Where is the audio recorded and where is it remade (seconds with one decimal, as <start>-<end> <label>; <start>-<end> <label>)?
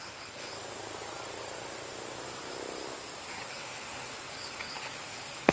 0.0-0.5 remade; 0.5-3.5 recorded; 3.5-5.5 remade